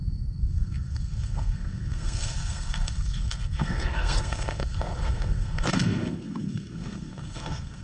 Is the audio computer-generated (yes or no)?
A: yes